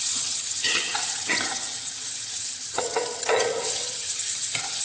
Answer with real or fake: fake